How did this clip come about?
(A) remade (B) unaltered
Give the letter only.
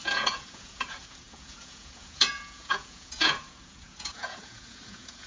A